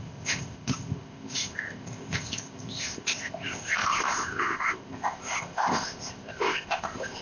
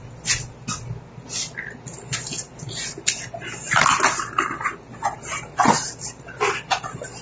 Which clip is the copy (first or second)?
first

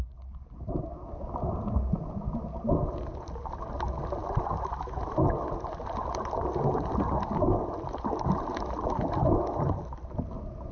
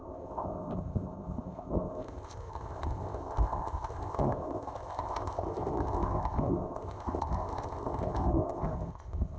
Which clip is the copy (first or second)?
second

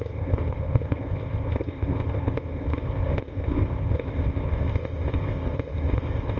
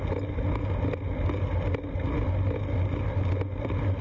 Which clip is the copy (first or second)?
first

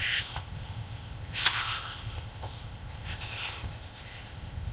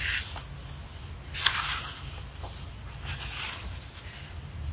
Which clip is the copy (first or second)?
first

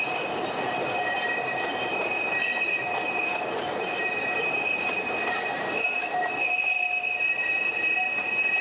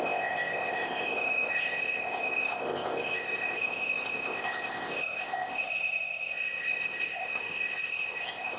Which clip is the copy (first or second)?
second